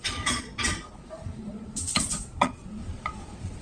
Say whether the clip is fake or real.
fake